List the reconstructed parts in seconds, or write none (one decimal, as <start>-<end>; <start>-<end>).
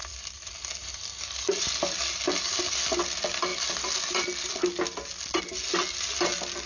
0.0-1.7